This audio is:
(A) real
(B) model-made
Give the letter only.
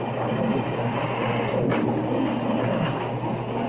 A